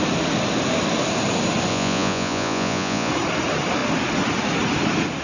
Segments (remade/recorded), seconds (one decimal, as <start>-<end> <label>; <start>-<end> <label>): 0.0-1.7 recorded; 1.7-3.1 remade; 3.1-5.2 recorded